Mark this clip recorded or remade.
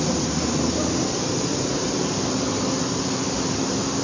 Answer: recorded